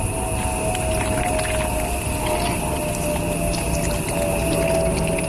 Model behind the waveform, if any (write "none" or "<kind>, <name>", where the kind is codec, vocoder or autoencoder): none